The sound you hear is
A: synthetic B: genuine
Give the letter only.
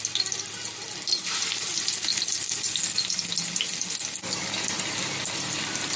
A